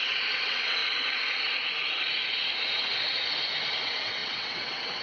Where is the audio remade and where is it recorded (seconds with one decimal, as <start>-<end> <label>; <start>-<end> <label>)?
0.0-0.8 remade; 0.8-3.8 recorded; 3.8-5.0 remade